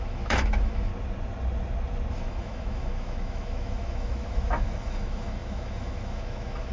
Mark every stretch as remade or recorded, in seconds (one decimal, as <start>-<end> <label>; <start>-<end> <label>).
0.0-0.9 remade; 0.9-2.1 recorded; 2.1-6.7 remade